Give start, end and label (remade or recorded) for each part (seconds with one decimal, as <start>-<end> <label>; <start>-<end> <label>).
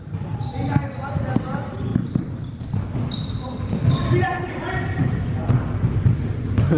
0.0-4.3 recorded; 4.3-5.0 remade; 5.0-6.8 recorded